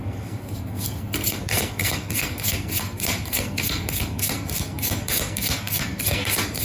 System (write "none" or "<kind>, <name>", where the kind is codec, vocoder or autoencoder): codec, SNAC